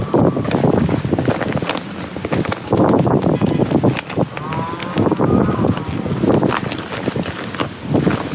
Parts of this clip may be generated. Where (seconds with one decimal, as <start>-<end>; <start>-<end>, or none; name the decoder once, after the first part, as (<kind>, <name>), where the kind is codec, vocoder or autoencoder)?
4.8-5.8 (codec, DAC)